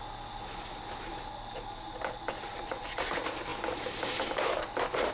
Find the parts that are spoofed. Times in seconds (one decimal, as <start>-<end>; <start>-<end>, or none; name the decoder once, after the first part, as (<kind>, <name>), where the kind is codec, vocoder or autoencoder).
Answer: none